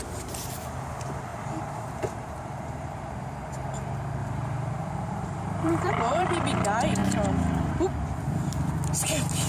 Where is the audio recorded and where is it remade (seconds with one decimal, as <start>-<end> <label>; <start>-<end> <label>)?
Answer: 0.0-1.3 recorded; 1.3-3.3 remade; 3.3-4.2 recorded; 4.2-6.3 remade; 6.3-9.5 recorded